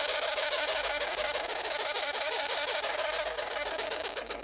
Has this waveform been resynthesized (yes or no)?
yes